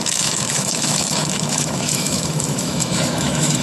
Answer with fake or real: fake